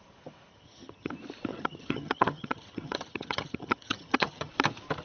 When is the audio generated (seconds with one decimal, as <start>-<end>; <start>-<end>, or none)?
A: 0.5-1.1; 1.5-4.5